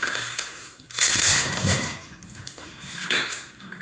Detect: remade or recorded remade